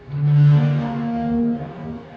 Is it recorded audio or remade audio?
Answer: remade